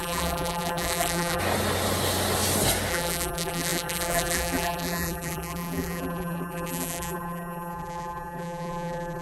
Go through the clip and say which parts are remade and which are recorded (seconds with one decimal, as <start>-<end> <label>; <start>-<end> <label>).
0.0-1.4 remade; 1.4-2.9 recorded; 2.9-9.2 remade